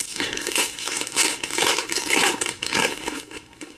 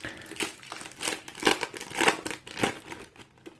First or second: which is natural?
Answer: second